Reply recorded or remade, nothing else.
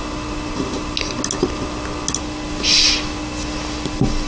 recorded